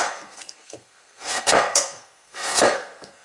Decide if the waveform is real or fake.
fake